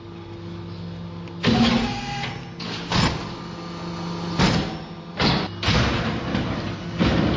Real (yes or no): yes